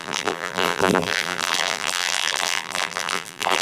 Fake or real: fake